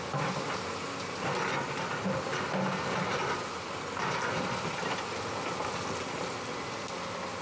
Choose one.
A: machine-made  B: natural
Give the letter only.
B